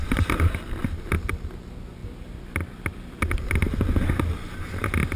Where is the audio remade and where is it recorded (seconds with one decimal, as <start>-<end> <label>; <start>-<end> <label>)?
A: 0.0-1.3 remade; 1.3-2.0 recorded; 2.0-4.0 remade; 4.0-5.2 recorded